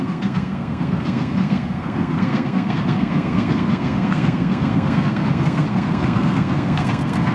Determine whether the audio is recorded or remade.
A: remade